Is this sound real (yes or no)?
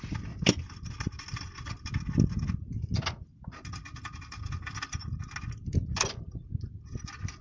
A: yes